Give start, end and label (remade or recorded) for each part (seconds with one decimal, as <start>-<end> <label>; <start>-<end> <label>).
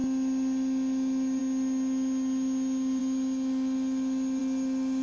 0.0-5.0 recorded